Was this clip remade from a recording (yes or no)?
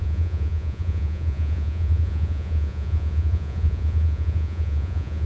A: yes